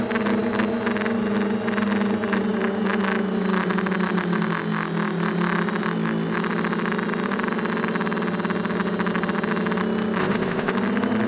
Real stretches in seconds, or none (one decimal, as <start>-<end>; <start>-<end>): 0.0-10.2; 10.7-11.3